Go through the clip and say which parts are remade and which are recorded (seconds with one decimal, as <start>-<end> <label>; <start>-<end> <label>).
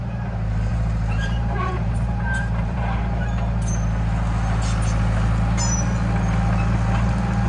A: 0.0-0.7 recorded; 0.7-3.0 remade; 3.0-7.5 recorded